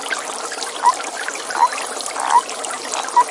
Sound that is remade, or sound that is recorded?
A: recorded